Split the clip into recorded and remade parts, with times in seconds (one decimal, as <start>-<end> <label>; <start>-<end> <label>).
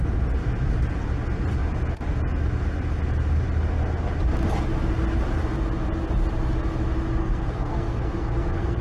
0.0-7.2 recorded; 7.2-8.8 remade